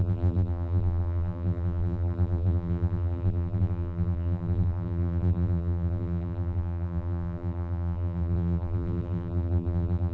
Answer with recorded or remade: remade